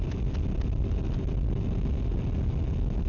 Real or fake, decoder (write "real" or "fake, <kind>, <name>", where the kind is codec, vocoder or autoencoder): real